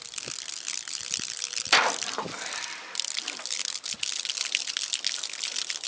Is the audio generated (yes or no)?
no